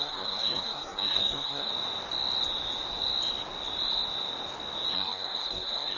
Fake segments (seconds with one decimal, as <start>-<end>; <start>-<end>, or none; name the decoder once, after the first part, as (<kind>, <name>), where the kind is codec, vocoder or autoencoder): 0.0-1.7 (codec, SNAC); 4.9-6.0